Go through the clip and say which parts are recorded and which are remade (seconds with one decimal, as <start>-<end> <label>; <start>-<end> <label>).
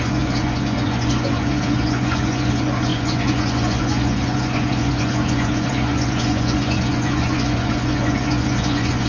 0.0-9.1 remade